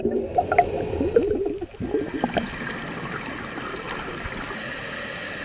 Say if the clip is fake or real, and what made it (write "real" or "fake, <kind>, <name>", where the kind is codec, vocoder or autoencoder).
real